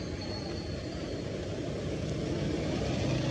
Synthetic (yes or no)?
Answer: no